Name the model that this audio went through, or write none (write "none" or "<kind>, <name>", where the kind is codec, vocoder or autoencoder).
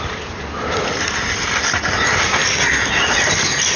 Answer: none